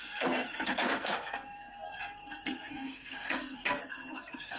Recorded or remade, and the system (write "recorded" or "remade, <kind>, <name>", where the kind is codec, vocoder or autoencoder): remade, codec, SNAC